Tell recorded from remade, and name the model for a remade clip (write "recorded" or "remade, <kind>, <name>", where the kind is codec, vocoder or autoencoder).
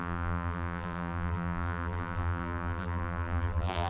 remade, vocoder, BigVGAN v2